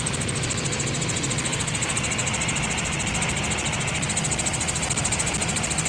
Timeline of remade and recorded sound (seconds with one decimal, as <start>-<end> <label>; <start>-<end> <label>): 0.0-5.9 recorded